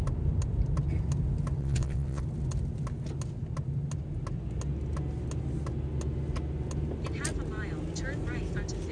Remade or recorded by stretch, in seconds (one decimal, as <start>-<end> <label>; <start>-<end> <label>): 0.0-1.6 recorded; 1.6-2.2 remade; 2.2-8.9 recorded